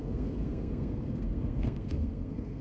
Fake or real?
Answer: fake